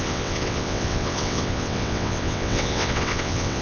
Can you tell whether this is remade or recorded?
remade